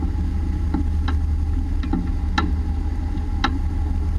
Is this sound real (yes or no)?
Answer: yes